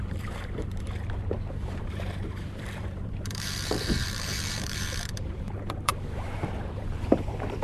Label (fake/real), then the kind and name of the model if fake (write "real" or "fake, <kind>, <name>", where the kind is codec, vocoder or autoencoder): fake, vocoder, BigVGAN v2